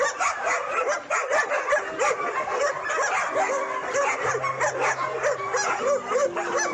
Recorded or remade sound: recorded